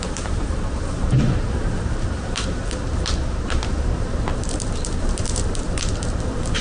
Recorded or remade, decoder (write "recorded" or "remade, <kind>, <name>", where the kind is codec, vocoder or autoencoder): remade, vocoder, BigVGAN v2